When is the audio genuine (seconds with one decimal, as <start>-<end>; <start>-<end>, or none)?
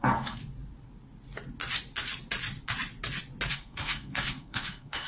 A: 0.4-3.5